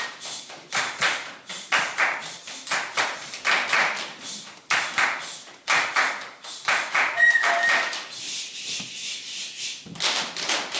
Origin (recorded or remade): recorded